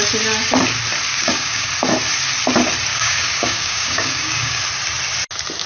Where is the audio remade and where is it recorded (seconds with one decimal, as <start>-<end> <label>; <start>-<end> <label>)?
0.0-1.1 recorded; 1.1-1.7 remade; 1.7-2.9 recorded; 2.9-4.6 remade; 4.6-5.7 recorded